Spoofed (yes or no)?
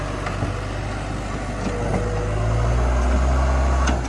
no